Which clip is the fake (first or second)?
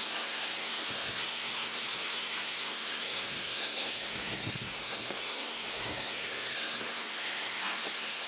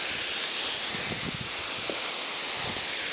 first